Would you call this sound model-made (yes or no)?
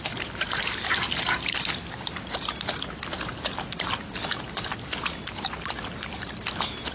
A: no